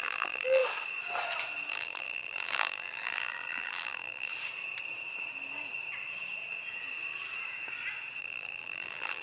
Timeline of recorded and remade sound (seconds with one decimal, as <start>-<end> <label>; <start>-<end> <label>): 0.0-0.6 remade; 0.6-1.7 recorded; 1.7-4.3 remade; 4.3-8.2 recorded; 8.2-9.2 remade